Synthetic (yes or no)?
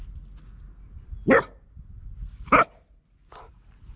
no